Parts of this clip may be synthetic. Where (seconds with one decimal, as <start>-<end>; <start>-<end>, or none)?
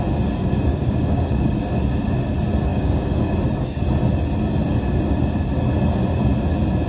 0.7-1.6; 2.7-3.2